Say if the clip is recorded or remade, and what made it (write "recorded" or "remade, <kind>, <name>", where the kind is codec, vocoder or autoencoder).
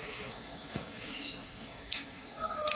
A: remade, codec, SNAC